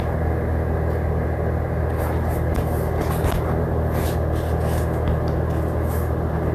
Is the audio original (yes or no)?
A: yes